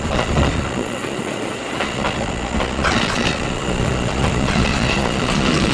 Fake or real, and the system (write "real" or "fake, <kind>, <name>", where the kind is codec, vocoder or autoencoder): fake, vocoder, Vocos